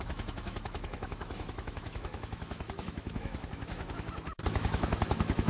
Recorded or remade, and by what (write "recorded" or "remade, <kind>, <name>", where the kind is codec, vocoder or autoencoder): remade, autoencoder, DAC-VAE